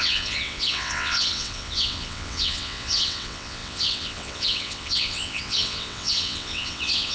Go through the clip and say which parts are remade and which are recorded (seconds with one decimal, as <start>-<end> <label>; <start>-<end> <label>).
0.0-7.1 remade